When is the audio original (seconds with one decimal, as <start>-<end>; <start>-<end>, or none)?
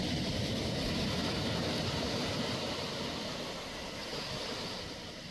0.6-1.2; 3.4-5.3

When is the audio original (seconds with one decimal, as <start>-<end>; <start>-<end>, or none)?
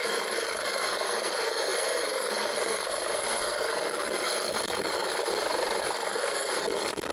5.3-5.8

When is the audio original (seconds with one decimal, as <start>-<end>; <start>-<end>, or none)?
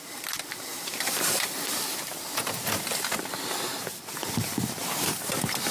0.0-0.7; 2.0-5.7